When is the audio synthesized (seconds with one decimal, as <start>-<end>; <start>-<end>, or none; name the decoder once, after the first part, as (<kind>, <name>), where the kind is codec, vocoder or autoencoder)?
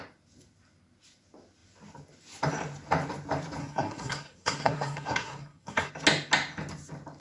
3.6-5.9 (codec, SNAC)